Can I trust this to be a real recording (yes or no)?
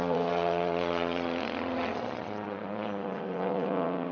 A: no